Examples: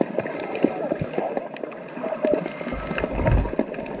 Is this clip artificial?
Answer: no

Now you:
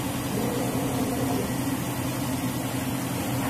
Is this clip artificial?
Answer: no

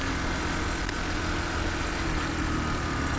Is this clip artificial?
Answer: no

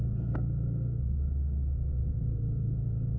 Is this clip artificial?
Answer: yes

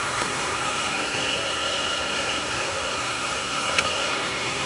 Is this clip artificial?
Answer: yes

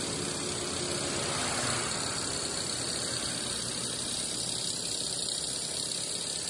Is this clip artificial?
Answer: no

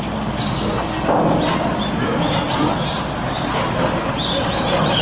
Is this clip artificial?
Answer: no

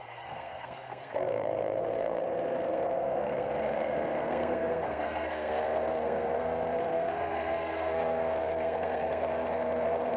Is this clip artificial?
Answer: yes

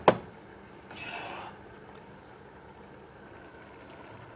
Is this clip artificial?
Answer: no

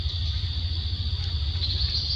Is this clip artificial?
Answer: no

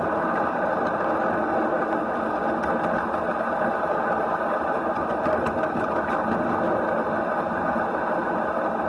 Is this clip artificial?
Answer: no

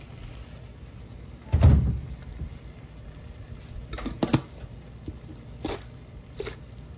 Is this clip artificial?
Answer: no